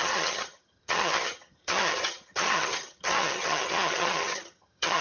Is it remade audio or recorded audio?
remade